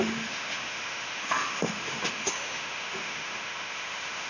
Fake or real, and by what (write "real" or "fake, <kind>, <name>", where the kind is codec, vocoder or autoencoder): fake, autoencoder, DAC-VAE